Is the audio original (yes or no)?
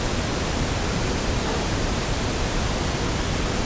yes